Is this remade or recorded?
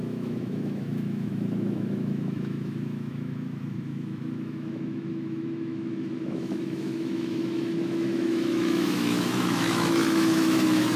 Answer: remade